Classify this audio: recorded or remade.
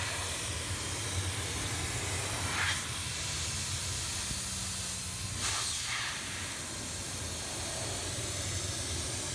recorded